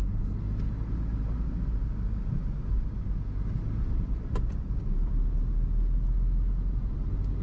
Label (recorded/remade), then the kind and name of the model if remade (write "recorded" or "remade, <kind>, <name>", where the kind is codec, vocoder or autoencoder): recorded